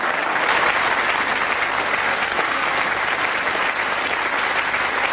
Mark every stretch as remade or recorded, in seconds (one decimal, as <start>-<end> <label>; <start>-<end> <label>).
0.0-2.1 recorded; 2.1-2.7 remade; 2.7-5.1 recorded